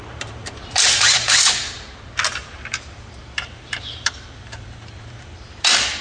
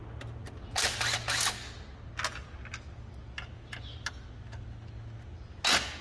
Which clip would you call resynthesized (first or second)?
first